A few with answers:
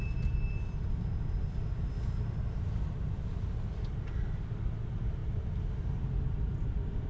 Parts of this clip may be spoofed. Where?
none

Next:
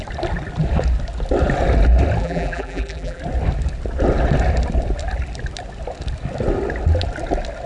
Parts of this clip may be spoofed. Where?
2.2-3.2 (vocoder, BigVGAN v2)

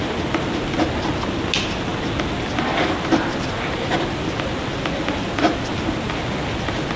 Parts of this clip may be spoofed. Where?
none